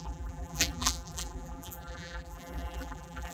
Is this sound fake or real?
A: fake